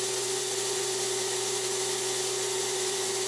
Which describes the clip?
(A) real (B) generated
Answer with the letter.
B